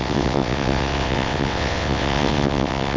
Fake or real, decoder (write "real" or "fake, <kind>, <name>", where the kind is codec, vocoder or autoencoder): fake, vocoder, WaveNeXt